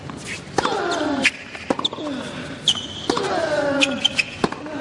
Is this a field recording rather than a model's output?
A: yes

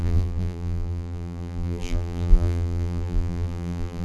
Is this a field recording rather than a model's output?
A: no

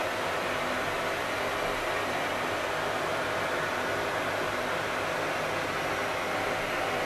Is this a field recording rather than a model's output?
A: yes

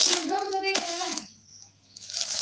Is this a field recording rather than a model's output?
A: no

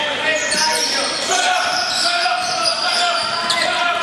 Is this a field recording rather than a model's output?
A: no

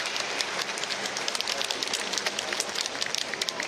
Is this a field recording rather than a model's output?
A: no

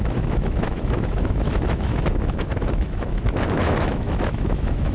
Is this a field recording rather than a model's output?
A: no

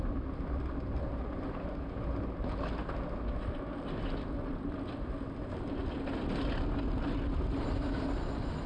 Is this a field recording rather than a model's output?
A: yes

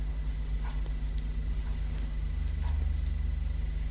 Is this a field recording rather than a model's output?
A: yes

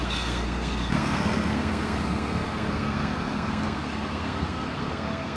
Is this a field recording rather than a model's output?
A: no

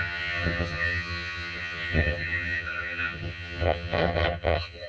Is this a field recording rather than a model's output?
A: no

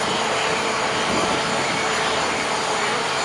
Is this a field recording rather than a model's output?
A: yes